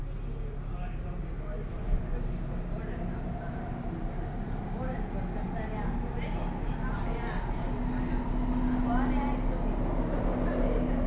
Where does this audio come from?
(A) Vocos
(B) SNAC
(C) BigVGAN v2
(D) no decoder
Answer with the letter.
D